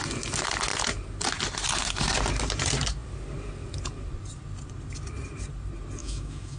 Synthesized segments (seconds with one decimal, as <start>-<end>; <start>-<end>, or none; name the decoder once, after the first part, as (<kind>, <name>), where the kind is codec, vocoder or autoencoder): 6.0-6.6 (autoencoder, DAC-VAE)